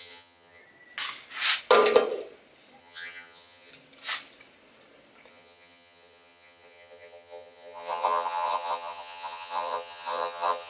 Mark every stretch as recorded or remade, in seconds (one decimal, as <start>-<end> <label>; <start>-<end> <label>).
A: 0.0-0.6 remade; 0.6-2.8 recorded; 2.8-3.7 remade; 3.7-5.3 recorded; 5.3-10.7 remade